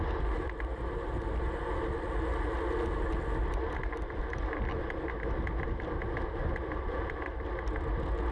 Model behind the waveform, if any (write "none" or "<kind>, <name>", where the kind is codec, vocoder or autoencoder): none